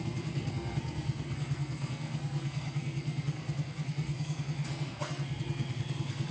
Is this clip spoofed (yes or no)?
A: yes